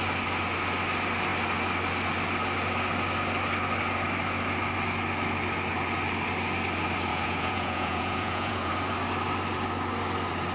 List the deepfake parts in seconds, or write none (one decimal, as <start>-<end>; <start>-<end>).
7.1-8.7